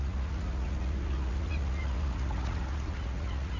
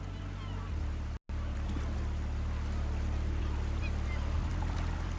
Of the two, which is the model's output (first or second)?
first